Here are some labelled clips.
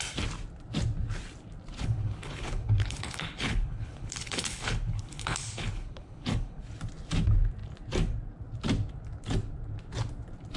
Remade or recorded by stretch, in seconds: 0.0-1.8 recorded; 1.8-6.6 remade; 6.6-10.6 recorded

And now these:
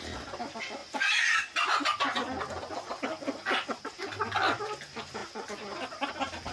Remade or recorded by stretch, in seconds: 0.0-6.5 recorded

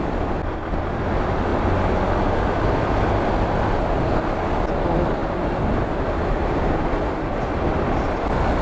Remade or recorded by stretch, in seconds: 0.0-8.6 recorded